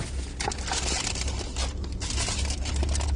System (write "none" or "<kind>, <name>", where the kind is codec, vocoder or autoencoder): none